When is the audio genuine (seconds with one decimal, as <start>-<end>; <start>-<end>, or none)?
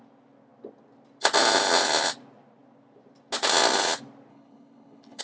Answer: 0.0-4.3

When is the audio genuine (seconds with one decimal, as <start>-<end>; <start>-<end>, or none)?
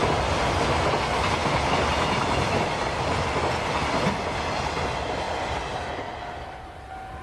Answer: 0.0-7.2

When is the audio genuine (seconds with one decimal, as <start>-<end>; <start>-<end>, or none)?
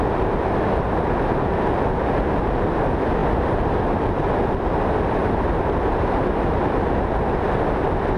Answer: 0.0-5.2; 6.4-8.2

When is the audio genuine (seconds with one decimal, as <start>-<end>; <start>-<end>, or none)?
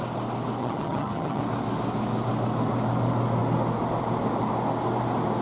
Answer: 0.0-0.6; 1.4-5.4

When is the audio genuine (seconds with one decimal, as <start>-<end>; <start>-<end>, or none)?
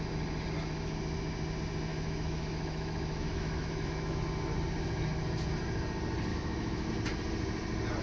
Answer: 0.0-1.9; 4.2-6.3; 6.9-8.0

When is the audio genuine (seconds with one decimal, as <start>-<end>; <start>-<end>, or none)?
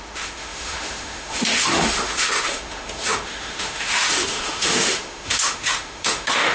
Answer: none